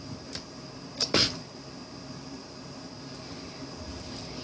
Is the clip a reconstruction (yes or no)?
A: no